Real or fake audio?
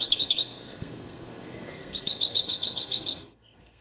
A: fake